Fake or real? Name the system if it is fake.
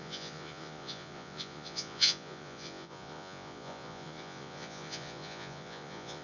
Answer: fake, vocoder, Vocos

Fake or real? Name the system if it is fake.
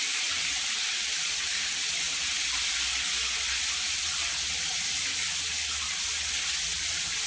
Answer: real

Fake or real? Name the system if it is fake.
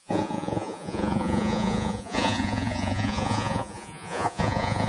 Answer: fake, vocoder, Vocos